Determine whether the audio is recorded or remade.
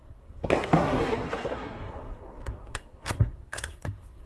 remade